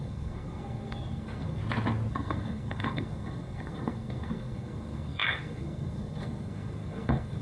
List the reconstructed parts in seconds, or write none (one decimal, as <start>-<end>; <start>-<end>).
0.0-1.6; 2.1-7.4